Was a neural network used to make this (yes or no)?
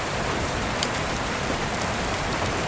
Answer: yes